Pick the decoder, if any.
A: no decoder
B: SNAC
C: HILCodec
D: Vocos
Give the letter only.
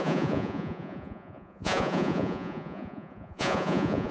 D